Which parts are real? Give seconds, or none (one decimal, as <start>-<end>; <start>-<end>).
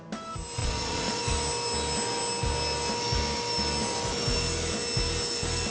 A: 0.0-0.6; 1.2-5.7